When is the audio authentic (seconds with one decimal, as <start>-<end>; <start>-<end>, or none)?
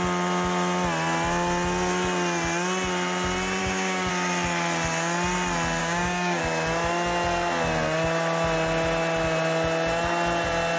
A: 0.0-3.6; 4.1-5.8; 6.4-10.8